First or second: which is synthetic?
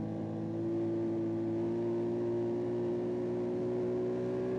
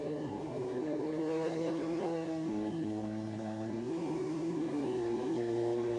second